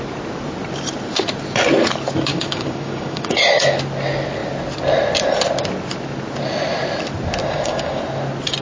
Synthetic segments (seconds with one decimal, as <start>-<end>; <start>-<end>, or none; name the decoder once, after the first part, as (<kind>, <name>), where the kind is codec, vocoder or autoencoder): 2.3-3.8 (codec, DAC); 7.4-8.0